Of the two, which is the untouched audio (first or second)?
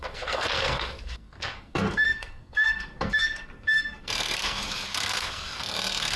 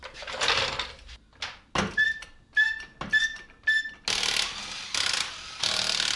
second